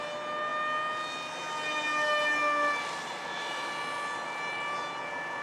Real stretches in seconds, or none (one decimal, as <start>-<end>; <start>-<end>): 0.0-3.2; 3.7-5.4